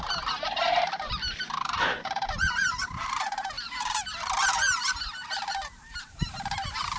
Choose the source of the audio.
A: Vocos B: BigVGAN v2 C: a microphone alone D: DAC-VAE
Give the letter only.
B